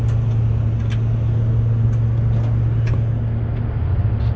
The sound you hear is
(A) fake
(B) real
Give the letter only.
B